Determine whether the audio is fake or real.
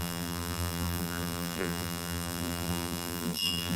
fake